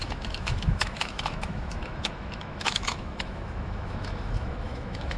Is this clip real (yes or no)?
no